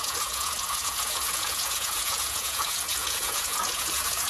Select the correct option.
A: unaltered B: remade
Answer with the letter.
B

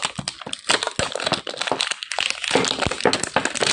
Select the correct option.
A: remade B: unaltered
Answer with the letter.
B